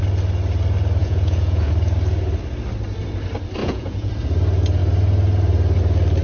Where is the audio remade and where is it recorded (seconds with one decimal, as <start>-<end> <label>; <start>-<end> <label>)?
0.0-1.0 recorded; 1.0-1.7 remade; 1.7-3.6 recorded; 3.6-4.1 remade; 4.1-6.2 recorded